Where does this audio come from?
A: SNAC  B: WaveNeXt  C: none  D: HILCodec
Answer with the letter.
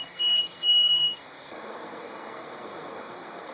A